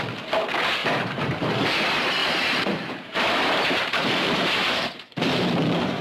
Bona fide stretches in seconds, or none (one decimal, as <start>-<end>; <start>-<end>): 0.0-0.8; 1.8-2.2